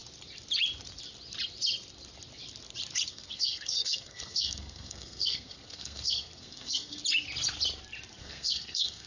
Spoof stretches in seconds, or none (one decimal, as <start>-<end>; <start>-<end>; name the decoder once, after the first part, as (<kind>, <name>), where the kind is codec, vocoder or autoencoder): 3.1-7.0 (codec, SNAC); 8.2-9.1